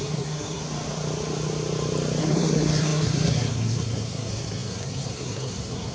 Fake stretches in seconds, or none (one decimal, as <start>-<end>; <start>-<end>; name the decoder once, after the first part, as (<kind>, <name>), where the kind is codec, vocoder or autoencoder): 0.0-0.6 (codec, SNAC); 2.2-5.9